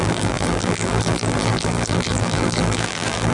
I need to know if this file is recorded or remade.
remade